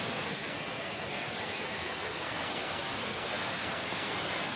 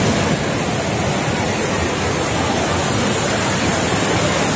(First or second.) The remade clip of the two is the first